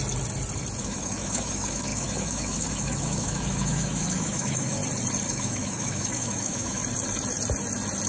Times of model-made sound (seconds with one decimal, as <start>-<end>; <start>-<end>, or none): 0.8-4.8; 5.3-6.8